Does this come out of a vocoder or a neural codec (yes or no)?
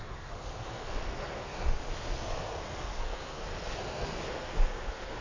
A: yes